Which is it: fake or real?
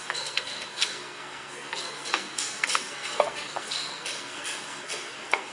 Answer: fake